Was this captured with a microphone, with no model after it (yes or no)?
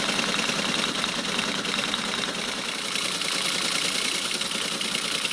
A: yes